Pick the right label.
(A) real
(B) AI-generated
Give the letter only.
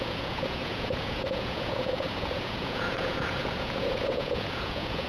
B